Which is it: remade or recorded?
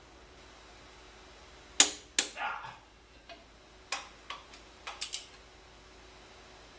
recorded